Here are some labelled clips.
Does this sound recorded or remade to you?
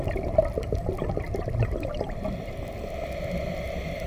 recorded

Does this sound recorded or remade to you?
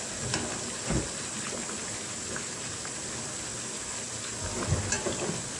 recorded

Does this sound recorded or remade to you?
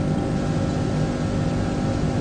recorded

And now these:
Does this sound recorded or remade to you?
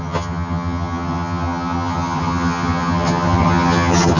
remade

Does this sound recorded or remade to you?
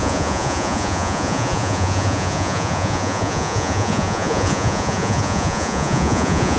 remade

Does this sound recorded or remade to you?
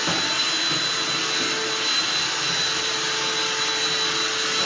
recorded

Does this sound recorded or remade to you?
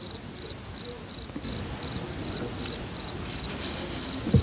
recorded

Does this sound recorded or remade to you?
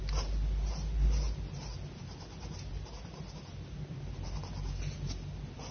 recorded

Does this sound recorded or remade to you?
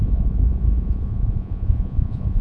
remade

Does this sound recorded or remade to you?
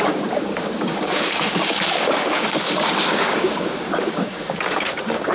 remade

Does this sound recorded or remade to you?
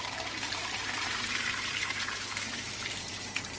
remade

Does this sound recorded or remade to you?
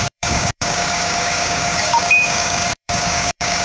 remade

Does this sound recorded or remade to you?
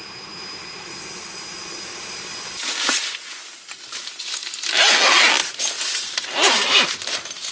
recorded